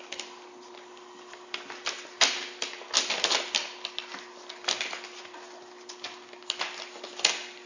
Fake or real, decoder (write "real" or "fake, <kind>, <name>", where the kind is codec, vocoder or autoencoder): real